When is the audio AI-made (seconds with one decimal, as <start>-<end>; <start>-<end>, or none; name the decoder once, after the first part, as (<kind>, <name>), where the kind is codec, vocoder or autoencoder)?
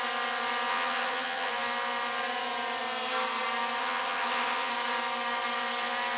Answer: 0.7-1.5 (vocoder, HiFi-GAN); 3.8-4.7